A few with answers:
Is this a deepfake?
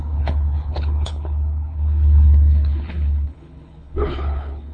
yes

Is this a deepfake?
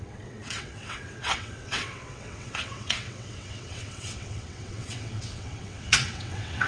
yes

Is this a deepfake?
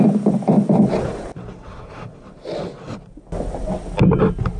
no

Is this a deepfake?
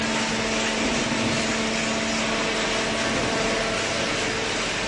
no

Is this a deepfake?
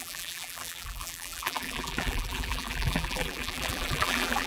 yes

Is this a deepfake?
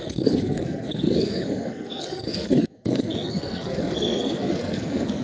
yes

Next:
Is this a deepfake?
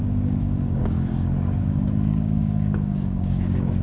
yes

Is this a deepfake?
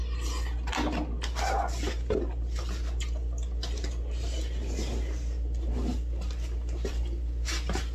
no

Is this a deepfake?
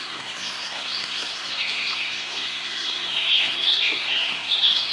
yes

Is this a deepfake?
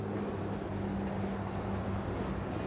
no